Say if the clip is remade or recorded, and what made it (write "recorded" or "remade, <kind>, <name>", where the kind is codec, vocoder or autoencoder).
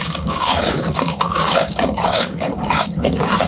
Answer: remade, codec, DAC